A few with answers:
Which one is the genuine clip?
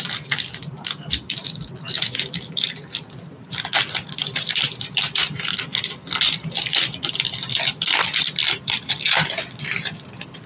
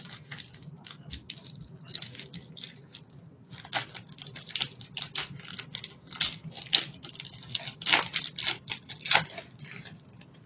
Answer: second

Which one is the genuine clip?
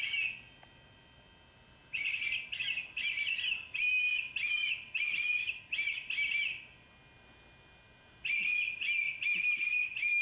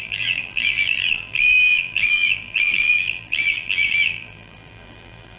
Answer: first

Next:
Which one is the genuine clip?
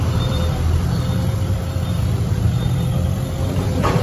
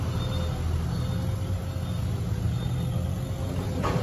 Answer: second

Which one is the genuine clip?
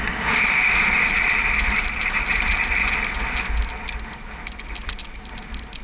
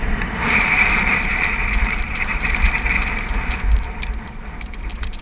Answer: first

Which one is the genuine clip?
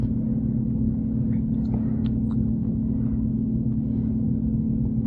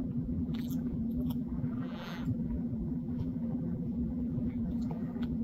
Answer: first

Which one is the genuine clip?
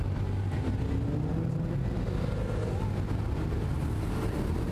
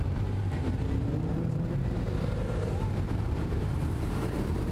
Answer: first